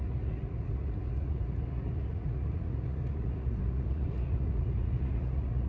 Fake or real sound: fake